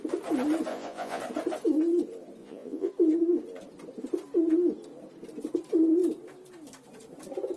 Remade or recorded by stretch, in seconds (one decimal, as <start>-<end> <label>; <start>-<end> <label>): 0.0-0.7 recorded; 0.7-1.2 remade; 1.2-2.4 recorded; 2.4-2.9 remade; 2.9-7.6 recorded